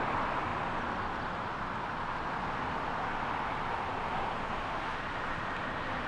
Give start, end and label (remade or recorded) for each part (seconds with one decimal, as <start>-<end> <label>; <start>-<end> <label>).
0.0-6.1 recorded